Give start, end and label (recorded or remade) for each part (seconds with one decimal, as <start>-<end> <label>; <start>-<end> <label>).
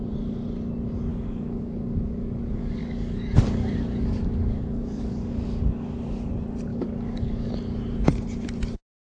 0.0-1.1 recorded; 1.1-2.4 remade; 2.4-2.8 recorded; 2.8-6.3 remade; 6.3-6.7 recorded; 6.7-7.5 remade; 7.5-9.1 recorded